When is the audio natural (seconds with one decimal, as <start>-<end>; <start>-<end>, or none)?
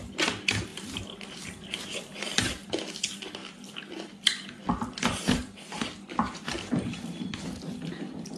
3.4-4.6